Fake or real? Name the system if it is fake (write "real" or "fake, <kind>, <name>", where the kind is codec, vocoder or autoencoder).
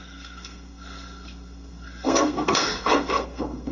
fake, codec, SNAC